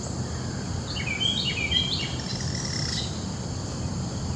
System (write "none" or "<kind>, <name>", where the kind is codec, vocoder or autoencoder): none